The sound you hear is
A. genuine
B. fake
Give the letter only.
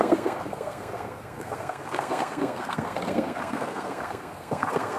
B